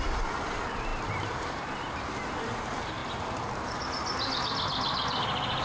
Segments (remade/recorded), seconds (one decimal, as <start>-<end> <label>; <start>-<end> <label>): 0.0-3.0 remade; 3.0-5.6 recorded

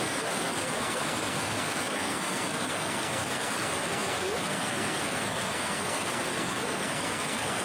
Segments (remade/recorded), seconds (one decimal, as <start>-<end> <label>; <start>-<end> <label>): 0.0-7.6 remade

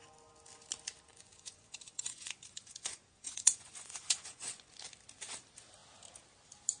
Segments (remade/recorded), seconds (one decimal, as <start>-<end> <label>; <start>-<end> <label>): 0.0-1.1 recorded; 1.1-4.7 remade; 4.7-6.8 recorded

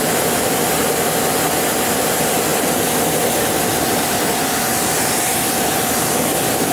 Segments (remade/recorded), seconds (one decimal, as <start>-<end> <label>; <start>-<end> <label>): 0.0-2.5 recorded; 2.5-3.4 remade; 3.4-4.7 recorded; 4.7-6.2 remade; 6.2-6.7 recorded

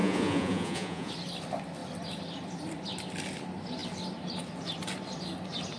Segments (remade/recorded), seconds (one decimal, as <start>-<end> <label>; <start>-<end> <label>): 0.0-1.1 remade; 1.1-5.8 recorded

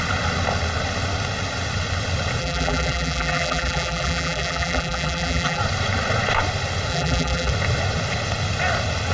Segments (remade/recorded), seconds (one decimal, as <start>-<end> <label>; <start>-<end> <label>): 0.0-2.4 recorded; 2.4-5.6 remade; 5.6-6.9 recorded; 6.9-7.5 remade; 7.5-9.1 recorded

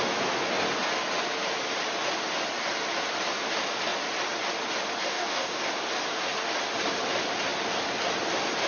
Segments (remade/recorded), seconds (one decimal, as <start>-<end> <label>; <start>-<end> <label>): 0.0-5.1 recorded; 5.1-5.6 remade; 5.6-8.7 recorded